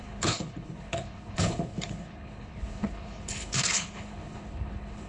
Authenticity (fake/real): fake